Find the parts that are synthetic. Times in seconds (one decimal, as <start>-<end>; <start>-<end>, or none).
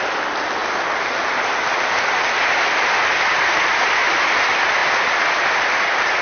none